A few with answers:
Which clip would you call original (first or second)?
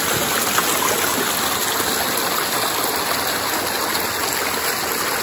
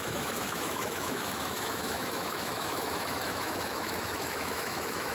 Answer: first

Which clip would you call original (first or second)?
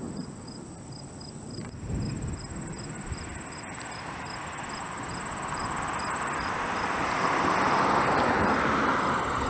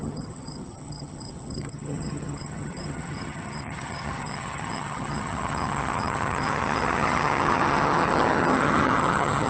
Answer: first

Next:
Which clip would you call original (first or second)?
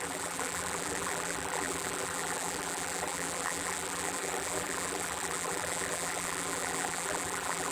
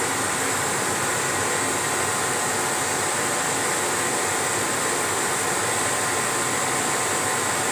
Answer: second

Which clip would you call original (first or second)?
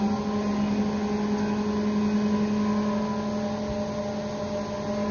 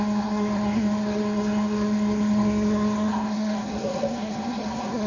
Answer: first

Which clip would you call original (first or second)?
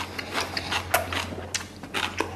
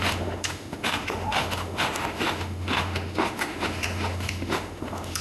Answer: first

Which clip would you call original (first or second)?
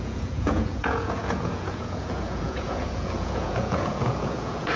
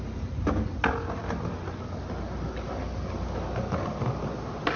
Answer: second